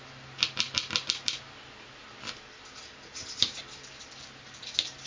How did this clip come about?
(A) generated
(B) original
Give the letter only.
B